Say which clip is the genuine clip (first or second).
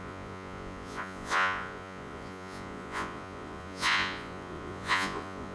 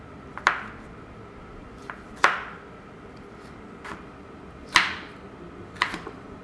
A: second